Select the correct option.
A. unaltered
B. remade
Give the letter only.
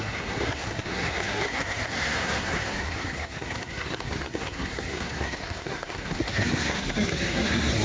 B